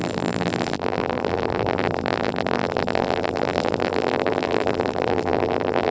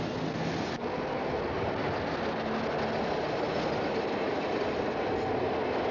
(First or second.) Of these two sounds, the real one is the second